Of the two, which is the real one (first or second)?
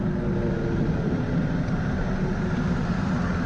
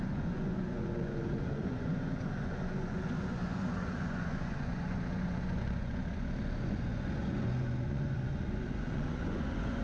first